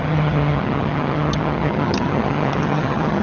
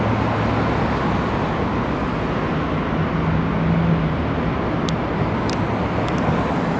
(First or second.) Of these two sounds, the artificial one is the first